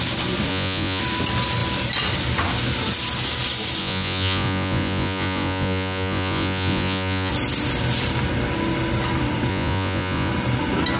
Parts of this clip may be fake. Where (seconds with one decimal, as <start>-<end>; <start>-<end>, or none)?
0.5-1.0; 3.8-7.3; 9.5-10.3